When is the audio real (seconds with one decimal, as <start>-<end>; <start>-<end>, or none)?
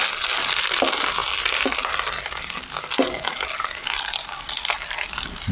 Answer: 0.0-1.2; 1.9-5.5